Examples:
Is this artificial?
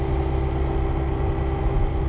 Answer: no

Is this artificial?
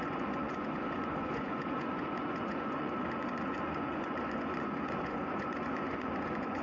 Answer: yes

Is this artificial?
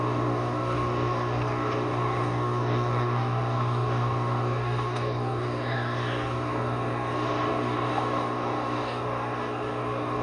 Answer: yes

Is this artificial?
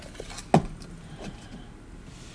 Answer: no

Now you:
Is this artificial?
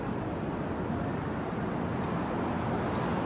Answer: no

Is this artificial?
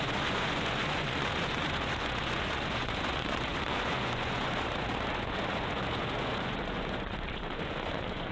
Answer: yes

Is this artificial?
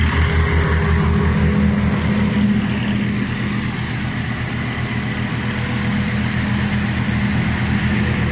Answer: no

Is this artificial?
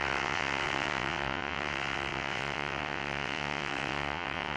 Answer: yes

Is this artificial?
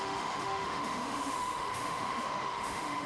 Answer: yes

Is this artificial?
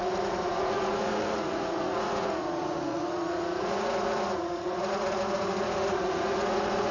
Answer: yes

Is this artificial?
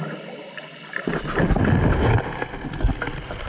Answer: no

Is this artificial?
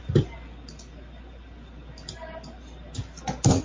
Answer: no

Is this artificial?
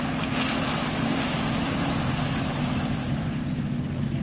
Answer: no